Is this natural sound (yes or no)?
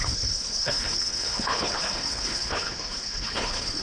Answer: no